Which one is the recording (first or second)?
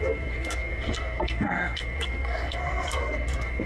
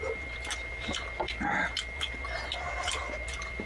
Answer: second